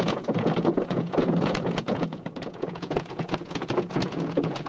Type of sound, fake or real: fake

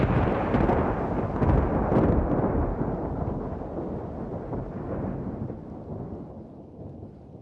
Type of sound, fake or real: real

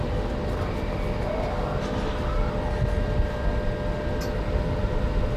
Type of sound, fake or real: real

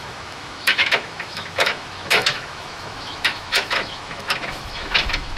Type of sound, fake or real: fake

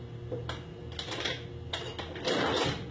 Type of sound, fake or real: real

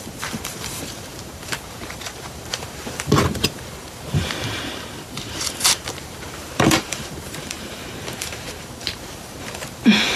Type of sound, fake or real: fake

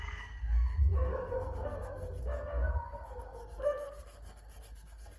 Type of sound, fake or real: fake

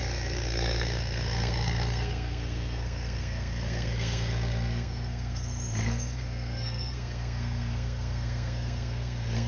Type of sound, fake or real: fake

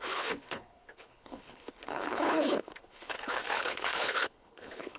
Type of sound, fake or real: fake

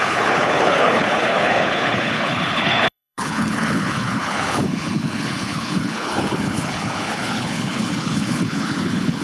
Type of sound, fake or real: fake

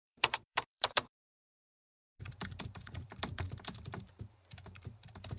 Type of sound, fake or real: fake